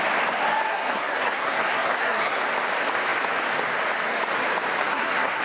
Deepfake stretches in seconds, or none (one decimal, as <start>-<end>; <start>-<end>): 0.7-2.4; 4.8-5.4